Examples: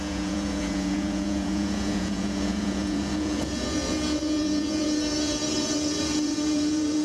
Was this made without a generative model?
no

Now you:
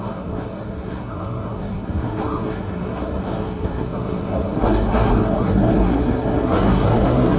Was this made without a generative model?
no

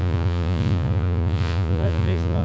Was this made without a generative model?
no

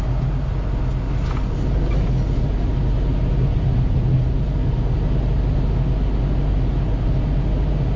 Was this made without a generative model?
yes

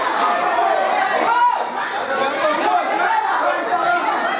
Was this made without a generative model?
yes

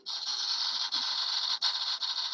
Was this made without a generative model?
yes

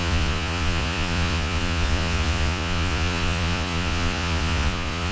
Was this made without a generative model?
no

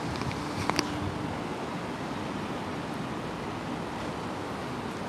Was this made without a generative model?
yes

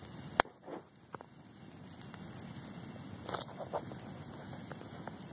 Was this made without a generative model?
yes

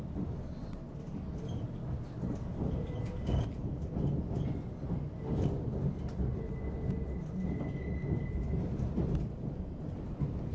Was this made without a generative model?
yes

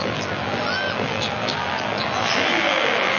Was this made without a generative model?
no